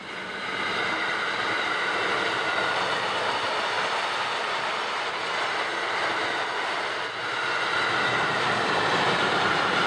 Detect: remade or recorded recorded